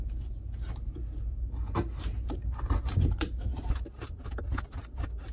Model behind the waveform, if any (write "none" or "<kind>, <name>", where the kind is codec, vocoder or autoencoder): vocoder, BigVGAN v2